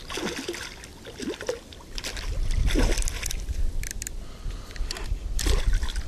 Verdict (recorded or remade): recorded